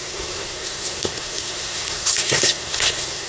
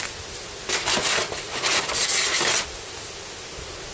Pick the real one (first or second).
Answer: second